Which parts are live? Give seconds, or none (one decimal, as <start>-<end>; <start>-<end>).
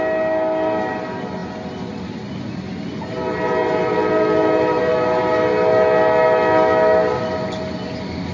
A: 0.0-8.3